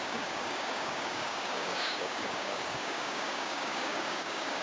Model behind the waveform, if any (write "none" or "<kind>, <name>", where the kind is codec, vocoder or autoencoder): codec, DAC